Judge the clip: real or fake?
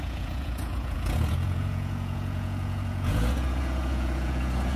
fake